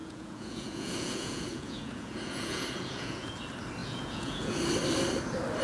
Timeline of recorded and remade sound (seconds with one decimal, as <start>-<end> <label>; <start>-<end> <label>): 0.0-3.4 remade; 3.4-3.8 recorded; 3.8-4.6 remade; 4.6-5.6 recorded